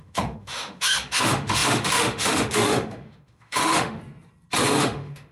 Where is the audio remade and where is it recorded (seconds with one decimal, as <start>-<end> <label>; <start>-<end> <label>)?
0.0-4.0 remade; 4.0-4.8 recorded; 4.8-5.3 remade